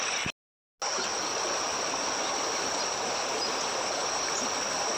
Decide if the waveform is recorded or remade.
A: recorded